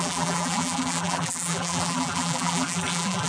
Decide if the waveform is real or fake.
fake